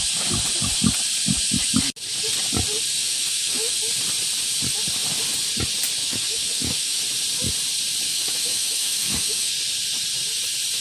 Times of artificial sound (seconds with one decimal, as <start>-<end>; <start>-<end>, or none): 3.0-3.8; 6.0-7.0; 8.1-9.5